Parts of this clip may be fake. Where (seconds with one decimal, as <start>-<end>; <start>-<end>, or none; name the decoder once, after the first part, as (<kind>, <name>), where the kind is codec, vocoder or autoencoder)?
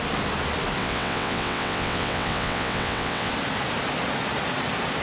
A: 0.8-3.3 (vocoder, WaveNeXt)